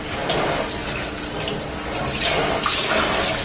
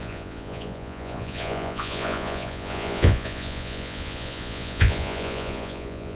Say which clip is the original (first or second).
first